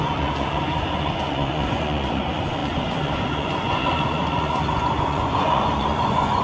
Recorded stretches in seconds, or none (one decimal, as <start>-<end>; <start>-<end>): none